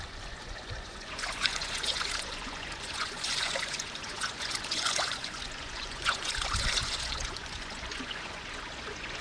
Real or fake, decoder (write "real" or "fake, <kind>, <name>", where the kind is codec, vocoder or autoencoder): fake, vocoder, Vocos